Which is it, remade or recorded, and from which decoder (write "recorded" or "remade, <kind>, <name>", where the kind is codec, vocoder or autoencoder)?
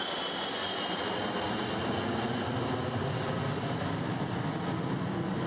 recorded